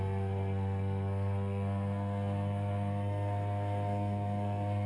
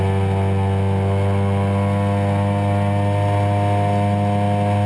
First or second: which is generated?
first